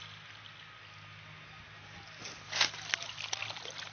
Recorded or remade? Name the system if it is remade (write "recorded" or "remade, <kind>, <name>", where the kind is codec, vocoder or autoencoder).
recorded